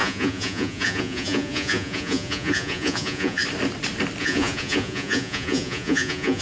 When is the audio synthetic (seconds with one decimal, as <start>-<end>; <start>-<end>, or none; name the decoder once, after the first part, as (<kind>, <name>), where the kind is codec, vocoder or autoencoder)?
0.0-3.4 (vocoder, Vocos); 4.2-6.4